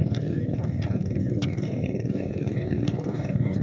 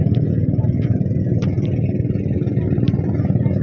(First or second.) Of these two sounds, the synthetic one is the first